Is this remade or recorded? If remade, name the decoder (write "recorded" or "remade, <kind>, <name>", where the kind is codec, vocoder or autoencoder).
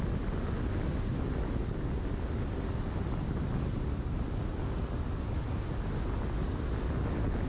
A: recorded